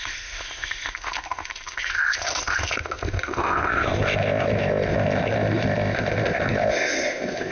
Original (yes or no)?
no